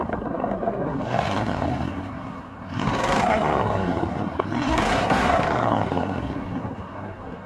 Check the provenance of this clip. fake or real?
fake